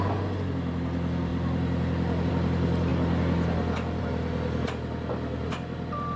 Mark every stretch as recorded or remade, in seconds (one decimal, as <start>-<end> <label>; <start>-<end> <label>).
0.0-6.2 recorded